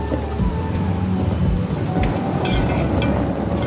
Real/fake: real